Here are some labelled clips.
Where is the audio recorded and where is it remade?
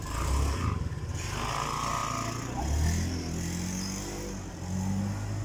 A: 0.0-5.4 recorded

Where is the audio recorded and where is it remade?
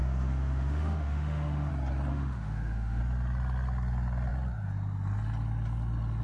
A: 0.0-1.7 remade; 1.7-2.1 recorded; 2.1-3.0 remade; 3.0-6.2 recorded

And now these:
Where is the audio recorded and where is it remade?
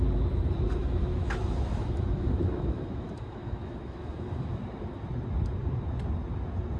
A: 0.0-0.8 recorded; 0.8-4.6 remade; 4.6-6.8 recorded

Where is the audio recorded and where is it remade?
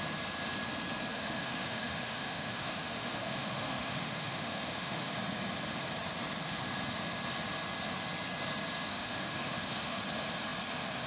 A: 0.0-1.1 recorded; 1.1-5.1 remade; 5.1-8.9 recorded; 8.9-10.0 remade; 10.0-11.1 recorded